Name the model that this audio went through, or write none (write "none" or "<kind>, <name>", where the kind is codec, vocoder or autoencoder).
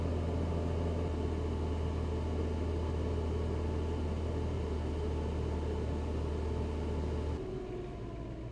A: none